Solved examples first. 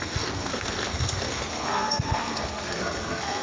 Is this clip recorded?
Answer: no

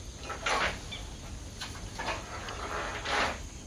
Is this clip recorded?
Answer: yes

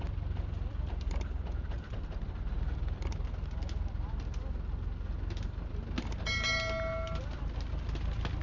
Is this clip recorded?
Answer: yes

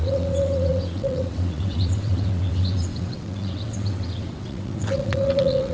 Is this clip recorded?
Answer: no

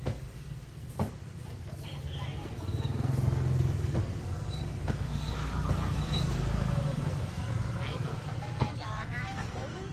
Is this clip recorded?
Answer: no